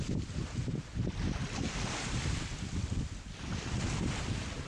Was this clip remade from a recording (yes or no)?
no